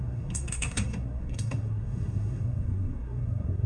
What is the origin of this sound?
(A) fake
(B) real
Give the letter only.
A